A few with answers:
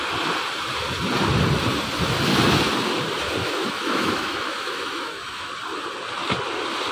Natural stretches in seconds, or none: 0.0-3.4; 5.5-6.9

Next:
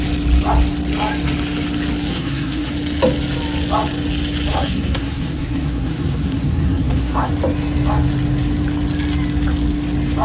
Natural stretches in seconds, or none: 0.0-2.1; 2.7-4.5; 7.3-10.2

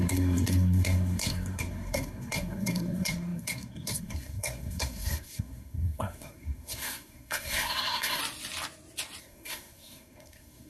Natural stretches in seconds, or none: 8.2-9.2

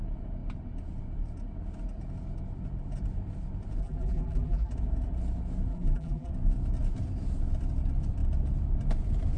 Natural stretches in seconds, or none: 0.0-3.8; 4.7-5.7; 6.3-9.4

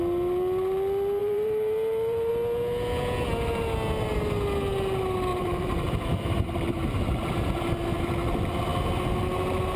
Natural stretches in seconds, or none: 0.0-1.2; 2.3-5.3; 8.0-9.8